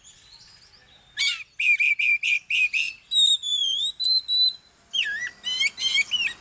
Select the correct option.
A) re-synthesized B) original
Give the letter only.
B